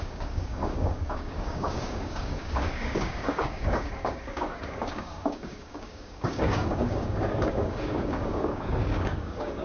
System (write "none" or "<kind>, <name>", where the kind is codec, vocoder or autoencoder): codec, DAC